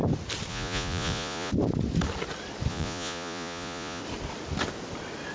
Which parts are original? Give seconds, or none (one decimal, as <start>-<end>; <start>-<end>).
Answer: 0.0-0.5; 1.5-2.7; 4.0-5.3